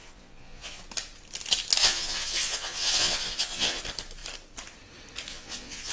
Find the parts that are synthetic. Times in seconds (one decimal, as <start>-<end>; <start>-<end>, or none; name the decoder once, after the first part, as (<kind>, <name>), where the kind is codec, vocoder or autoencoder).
0.0-0.8 (vocoder, Vocos); 1.8-3.8; 5.3-5.9